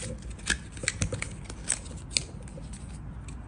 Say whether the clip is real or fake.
real